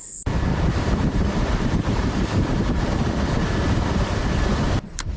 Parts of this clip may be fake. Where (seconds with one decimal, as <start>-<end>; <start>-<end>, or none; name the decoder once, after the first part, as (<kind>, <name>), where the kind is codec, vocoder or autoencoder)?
0.5-3.4 (vocoder, BigVGAN v2); 4.5-5.2